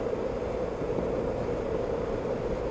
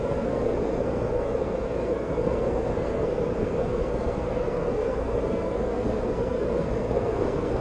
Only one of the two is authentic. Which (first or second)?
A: first